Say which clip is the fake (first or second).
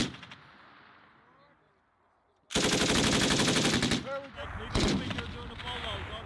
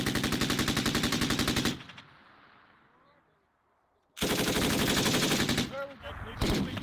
second